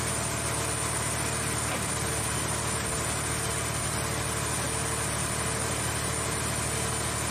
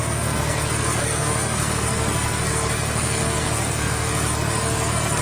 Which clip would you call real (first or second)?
first